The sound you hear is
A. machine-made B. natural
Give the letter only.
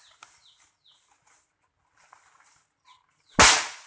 B